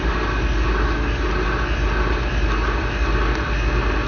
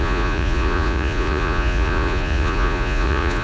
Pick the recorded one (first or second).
first